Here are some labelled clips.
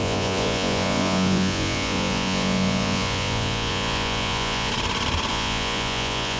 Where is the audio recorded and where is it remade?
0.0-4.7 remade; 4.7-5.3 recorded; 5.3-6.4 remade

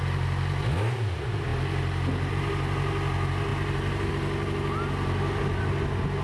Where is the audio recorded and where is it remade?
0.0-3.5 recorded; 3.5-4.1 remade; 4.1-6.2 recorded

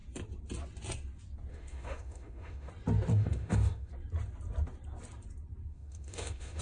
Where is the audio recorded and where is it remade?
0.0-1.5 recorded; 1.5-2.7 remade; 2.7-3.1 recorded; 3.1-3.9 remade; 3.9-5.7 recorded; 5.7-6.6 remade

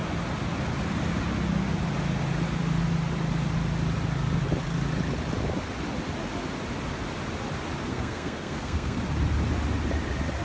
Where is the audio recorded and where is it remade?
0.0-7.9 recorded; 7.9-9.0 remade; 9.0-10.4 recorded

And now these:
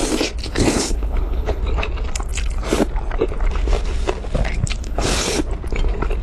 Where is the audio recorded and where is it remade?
0.0-0.4 recorded; 0.4-1.6 remade; 1.6-4.8 recorded; 4.8-5.4 remade; 5.4-6.2 recorded

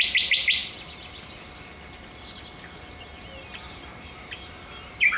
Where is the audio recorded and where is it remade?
0.0-5.2 recorded

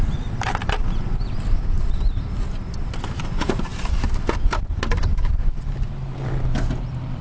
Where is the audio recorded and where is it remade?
0.0-0.6 remade; 0.6-3.1 recorded; 3.1-7.2 remade

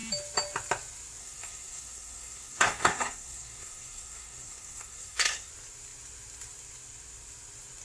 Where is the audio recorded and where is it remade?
0.0-1.2 recorded; 1.2-5.5 remade; 5.5-7.8 recorded